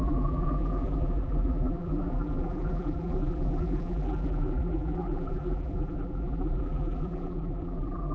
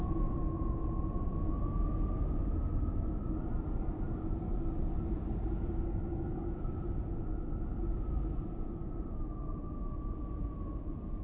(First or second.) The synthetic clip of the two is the first